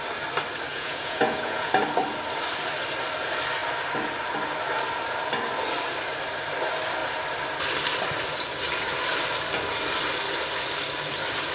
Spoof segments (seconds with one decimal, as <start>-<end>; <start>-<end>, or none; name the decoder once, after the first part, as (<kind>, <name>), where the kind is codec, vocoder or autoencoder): 0.7-1.7 (vocoder, Vocos)